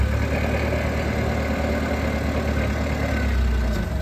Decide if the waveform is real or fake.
real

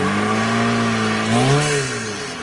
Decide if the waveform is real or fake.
real